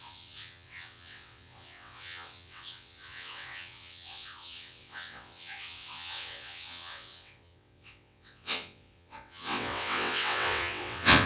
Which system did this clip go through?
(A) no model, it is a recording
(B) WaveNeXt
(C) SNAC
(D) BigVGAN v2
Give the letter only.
B